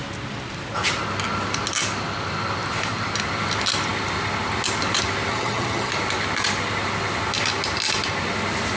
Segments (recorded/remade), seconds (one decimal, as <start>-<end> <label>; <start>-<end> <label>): 0.0-5.3 recorded; 5.3-5.9 remade; 5.9-8.8 recorded